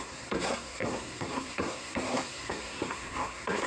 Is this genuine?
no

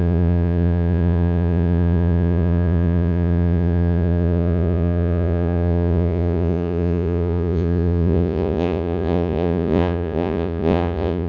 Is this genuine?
no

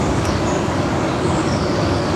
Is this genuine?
no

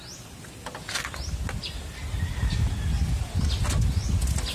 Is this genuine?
yes